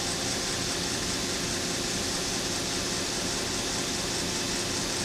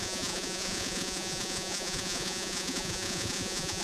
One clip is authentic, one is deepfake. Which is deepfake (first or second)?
second